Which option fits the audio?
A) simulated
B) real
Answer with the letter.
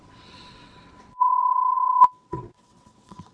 A